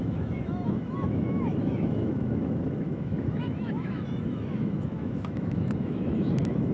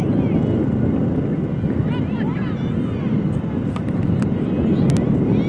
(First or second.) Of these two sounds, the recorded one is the second